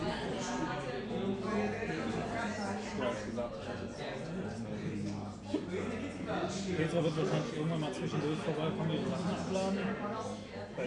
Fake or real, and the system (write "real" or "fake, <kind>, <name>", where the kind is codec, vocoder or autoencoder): real